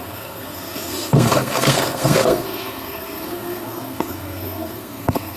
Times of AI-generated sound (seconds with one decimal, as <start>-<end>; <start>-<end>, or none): 0.0-5.4